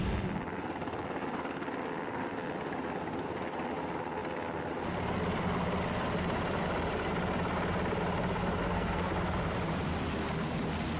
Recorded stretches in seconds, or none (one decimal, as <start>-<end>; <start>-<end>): 0.0-8.6; 9.1-11.0